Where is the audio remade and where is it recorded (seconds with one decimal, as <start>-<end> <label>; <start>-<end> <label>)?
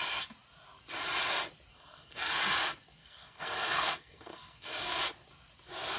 0.0-1.7 recorded; 1.7-2.4 remade; 2.4-3.0 recorded; 3.0-5.0 remade; 5.0-6.0 recorded